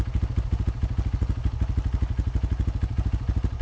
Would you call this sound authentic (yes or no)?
yes